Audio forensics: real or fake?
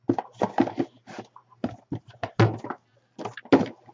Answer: real